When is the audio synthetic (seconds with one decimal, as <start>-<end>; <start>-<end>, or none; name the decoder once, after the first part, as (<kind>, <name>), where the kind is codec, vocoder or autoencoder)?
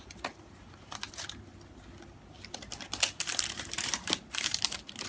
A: 0.0-1.5 (vocoder, BigVGAN v2); 2.5-5.1